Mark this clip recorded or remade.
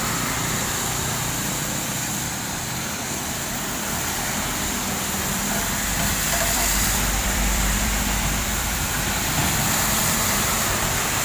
remade